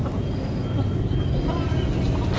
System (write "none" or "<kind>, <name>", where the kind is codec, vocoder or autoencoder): none